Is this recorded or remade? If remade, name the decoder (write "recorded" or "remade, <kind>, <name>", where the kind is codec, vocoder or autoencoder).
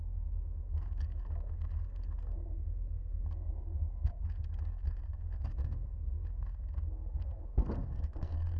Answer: remade, codec, SNAC